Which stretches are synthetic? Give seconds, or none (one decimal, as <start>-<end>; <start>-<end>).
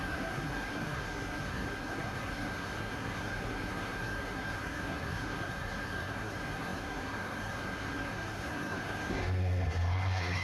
0.0-10.4